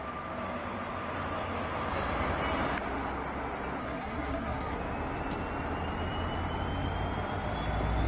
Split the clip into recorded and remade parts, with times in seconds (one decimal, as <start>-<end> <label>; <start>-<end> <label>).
0.0-3.8 recorded; 3.8-4.8 remade; 4.8-8.1 recorded